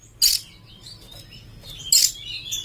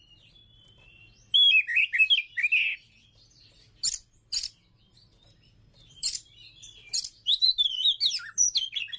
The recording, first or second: first